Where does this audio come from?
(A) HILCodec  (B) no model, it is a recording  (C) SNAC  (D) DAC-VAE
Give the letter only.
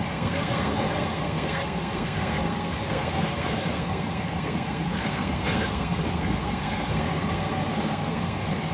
C